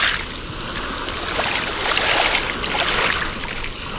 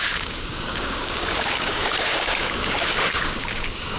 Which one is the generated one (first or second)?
second